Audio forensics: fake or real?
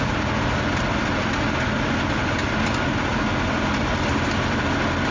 real